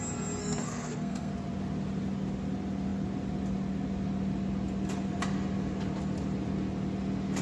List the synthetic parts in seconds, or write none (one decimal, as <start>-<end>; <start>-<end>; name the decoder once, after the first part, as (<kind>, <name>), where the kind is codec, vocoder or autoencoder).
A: 0.4-1.3 (codec, SNAC)